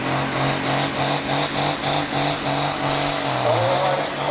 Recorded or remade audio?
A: recorded